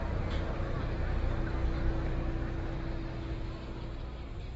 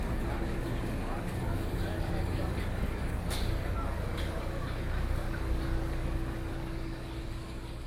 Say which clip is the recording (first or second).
first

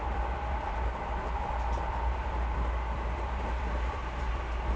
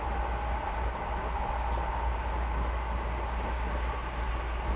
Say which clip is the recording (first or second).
second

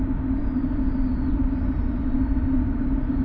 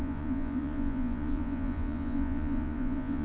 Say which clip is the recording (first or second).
first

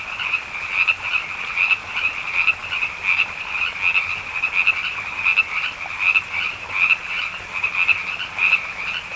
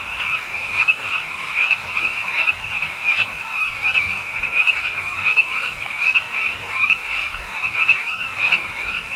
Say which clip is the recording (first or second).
first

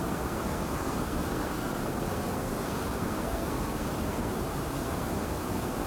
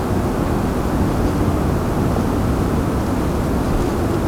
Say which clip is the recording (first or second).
second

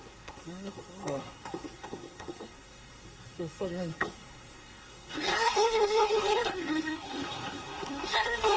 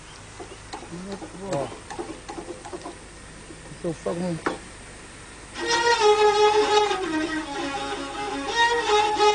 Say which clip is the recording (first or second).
second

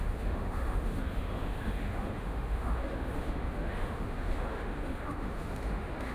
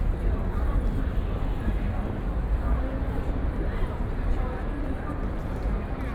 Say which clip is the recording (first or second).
second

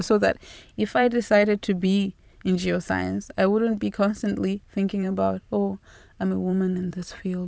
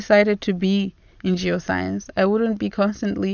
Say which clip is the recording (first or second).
second